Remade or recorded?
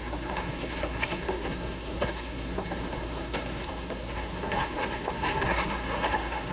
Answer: remade